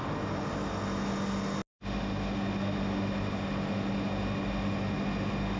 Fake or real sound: real